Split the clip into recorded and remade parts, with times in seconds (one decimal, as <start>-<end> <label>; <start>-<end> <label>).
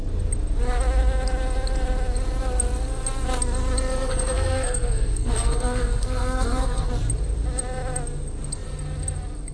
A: 0.0-3.9 recorded; 3.9-6.9 remade; 6.9-9.5 recorded